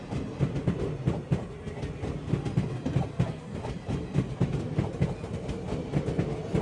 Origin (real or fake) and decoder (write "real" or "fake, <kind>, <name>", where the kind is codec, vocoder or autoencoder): real